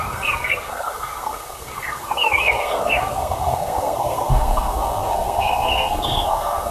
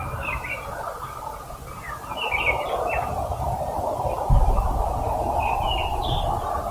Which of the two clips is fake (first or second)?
first